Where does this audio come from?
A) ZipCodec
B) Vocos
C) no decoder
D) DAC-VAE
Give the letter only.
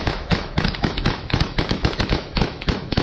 D